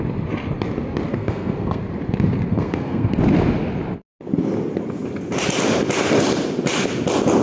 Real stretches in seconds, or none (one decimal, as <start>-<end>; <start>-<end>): 0.0-1.1; 1.8-2.5; 3.1-7.4